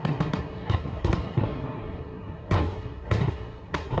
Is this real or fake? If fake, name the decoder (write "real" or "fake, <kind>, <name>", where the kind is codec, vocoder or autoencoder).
fake, codec, SNAC